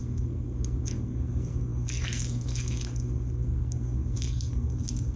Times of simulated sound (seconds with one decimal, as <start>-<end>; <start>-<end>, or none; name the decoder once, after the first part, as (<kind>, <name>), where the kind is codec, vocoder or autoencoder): 0.0-5.2 (codec, SNAC)